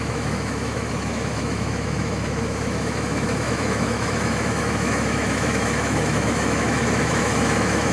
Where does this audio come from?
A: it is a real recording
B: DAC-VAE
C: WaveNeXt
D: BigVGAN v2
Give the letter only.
B